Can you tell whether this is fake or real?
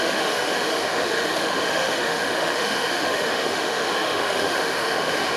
fake